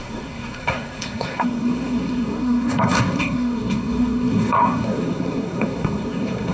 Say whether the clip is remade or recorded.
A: remade